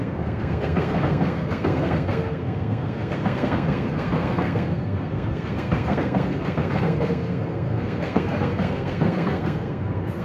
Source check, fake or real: fake